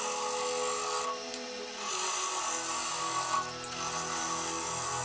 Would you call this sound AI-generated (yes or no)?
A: no